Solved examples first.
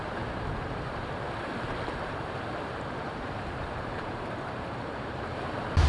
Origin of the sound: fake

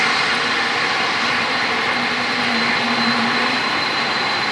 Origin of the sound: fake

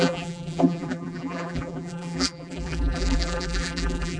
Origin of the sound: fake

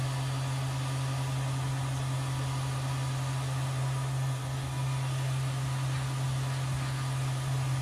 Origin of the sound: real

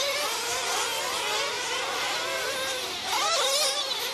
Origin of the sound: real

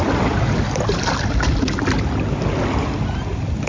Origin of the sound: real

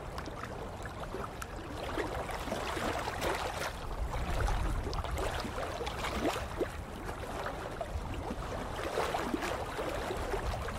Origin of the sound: real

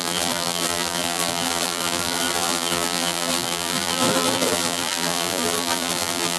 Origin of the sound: fake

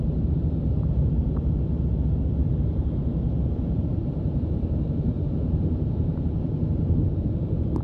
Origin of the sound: fake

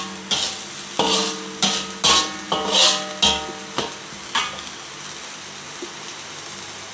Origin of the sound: real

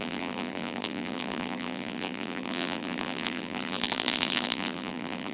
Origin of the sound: fake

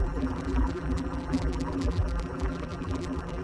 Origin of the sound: fake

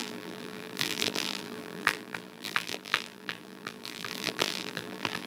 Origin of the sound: fake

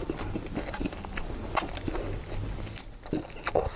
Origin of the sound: real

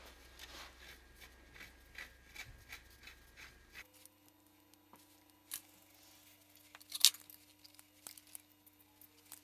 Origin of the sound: real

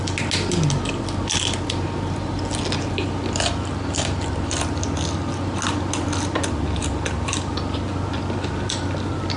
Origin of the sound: real